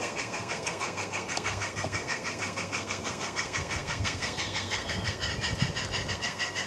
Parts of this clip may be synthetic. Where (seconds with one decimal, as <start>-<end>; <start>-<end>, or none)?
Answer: 0.0-5.3; 6.1-6.7